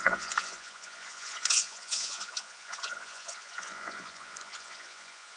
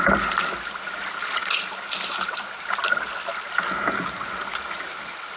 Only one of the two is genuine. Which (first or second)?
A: second